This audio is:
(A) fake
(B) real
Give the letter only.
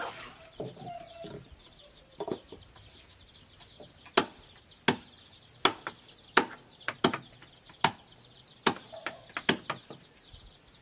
B